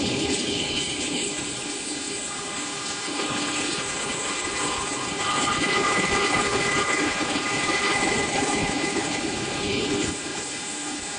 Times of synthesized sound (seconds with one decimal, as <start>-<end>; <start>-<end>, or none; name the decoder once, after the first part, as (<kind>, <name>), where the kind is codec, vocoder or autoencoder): 0.0-11.2 (codec, HILCodec)